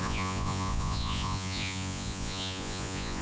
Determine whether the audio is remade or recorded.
remade